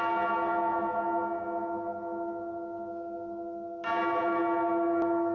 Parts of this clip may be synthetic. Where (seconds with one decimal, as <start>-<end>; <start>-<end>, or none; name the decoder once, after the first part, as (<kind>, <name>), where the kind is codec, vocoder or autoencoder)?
none